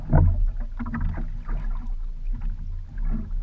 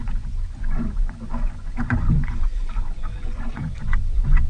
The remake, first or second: second